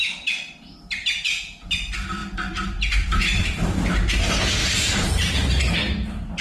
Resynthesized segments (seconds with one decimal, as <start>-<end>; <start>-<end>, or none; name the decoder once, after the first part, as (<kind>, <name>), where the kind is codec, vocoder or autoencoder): 2.2-3.8 (vocoder, BigVGAN v2); 4.6-5.6